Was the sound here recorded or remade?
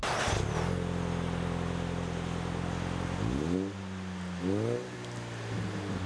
recorded